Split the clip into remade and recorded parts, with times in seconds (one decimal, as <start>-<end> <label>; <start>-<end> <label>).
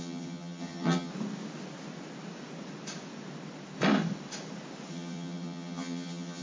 0.0-1.1 remade; 1.1-4.9 recorded; 4.9-6.4 remade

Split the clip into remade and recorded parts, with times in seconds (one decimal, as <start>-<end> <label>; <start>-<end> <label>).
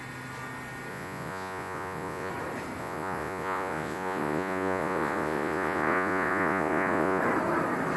0.0-0.9 recorded; 0.9-2.3 remade; 2.3-2.8 recorded; 2.8-7.2 remade; 7.2-8.0 recorded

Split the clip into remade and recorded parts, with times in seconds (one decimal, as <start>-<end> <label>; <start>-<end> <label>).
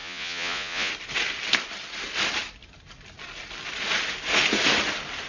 0.0-0.9 remade; 0.9-5.3 recorded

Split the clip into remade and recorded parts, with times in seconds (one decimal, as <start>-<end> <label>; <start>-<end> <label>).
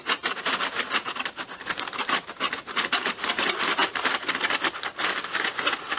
0.0-6.0 recorded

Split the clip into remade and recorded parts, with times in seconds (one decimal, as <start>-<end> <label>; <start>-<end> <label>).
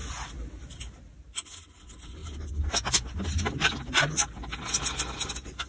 0.0-5.7 recorded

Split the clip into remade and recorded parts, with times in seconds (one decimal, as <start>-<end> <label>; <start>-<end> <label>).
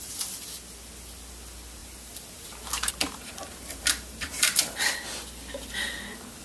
0.0-1.8 recorded; 1.8-4.9 remade; 4.9-6.4 recorded